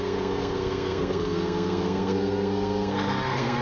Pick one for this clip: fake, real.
fake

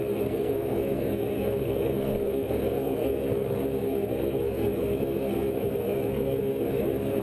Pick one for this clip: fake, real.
fake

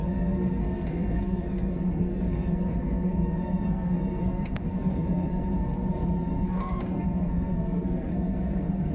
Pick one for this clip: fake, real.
fake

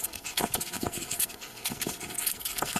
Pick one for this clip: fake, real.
fake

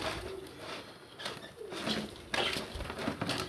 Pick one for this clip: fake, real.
real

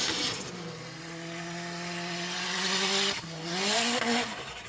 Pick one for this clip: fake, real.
real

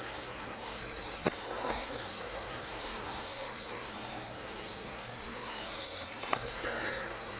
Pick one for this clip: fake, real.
fake